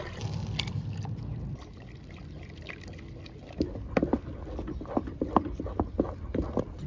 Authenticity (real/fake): real